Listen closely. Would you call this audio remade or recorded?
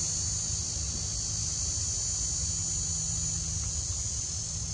recorded